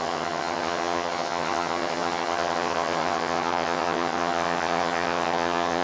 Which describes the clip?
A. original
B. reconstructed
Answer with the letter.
B